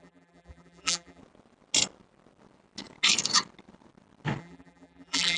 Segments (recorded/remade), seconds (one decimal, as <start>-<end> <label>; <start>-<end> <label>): 0.0-1.2 remade; 1.2-4.4 recorded; 4.4-5.4 remade